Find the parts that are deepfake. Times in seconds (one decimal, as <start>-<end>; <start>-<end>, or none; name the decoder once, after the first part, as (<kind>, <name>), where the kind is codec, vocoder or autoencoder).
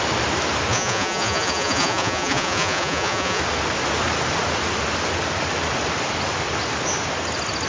0.7-3.4 (vocoder, Vocos)